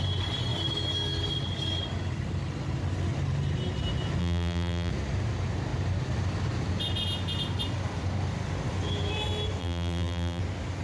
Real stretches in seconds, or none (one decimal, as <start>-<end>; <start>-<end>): 0.0-4.2; 4.9-9.6; 10.4-10.8